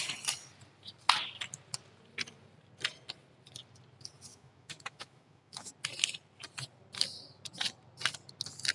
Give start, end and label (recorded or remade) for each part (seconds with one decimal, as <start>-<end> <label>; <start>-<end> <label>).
0.0-4.3 recorded; 4.3-5.7 remade; 5.7-8.7 recorded